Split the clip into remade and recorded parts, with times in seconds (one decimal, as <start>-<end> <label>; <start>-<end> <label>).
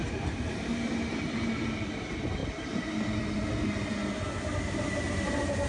0.0-5.7 recorded